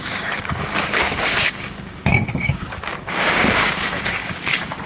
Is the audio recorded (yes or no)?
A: no